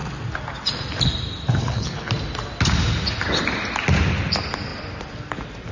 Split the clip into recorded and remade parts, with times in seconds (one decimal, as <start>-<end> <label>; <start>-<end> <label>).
0.0-1.6 recorded; 1.6-2.1 remade; 2.1-5.7 recorded